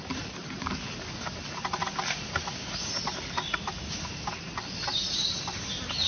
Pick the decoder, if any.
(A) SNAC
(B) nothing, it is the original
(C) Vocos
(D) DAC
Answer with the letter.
B